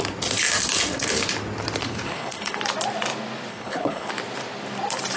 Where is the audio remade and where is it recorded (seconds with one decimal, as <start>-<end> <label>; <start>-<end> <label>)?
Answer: 0.0-1.8 recorded; 1.8-2.6 remade; 2.6-3.5 recorded; 3.5-4.1 remade; 4.1-5.2 recorded